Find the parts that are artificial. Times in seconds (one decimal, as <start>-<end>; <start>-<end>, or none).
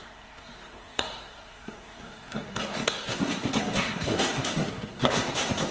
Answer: 0.0-5.7